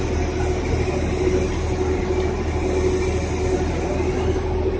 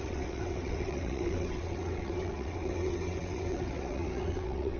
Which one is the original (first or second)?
first